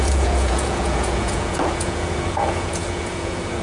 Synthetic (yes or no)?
yes